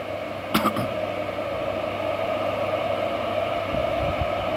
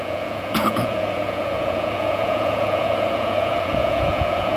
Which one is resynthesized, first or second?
second